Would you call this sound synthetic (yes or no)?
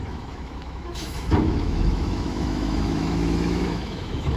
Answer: yes